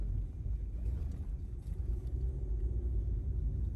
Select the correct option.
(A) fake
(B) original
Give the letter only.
B